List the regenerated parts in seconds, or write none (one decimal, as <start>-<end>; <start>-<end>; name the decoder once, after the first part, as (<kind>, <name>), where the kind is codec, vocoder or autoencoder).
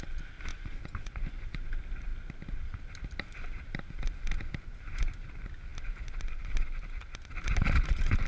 0.5-1.7 (vocoder, Vocos)